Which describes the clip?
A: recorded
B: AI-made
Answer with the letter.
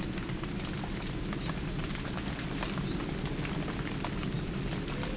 A